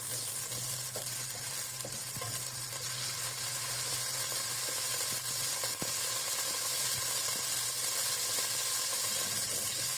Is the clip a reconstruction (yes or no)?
no